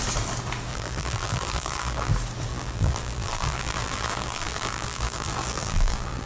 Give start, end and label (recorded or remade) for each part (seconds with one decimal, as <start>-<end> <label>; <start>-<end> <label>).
0.0-0.7 recorded; 0.7-2.1 remade; 2.1-2.5 recorded; 2.5-6.3 remade